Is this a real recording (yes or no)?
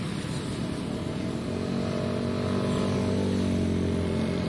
yes